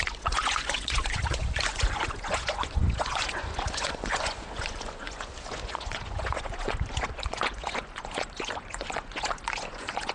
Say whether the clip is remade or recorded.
remade